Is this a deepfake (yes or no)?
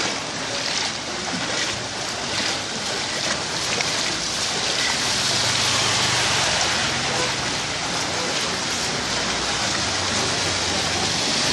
no